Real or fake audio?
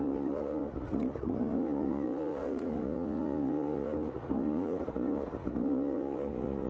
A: fake